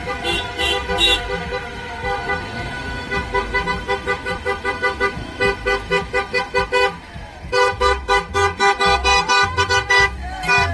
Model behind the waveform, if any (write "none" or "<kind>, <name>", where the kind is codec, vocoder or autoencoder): autoencoder, DAC-VAE